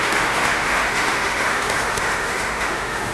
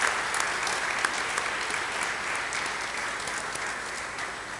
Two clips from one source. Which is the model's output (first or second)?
first